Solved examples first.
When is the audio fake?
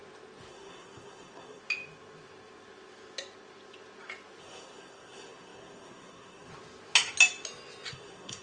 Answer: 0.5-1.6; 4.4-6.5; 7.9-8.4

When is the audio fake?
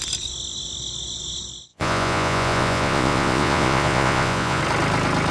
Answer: 1.7-4.6